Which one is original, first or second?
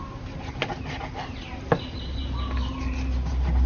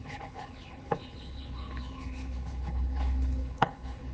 first